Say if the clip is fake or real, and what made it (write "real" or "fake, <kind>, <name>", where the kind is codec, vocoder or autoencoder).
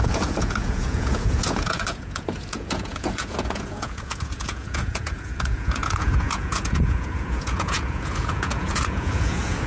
fake, vocoder, Vocos